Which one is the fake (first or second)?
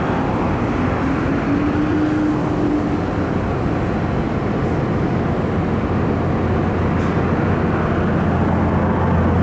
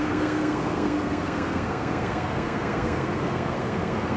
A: second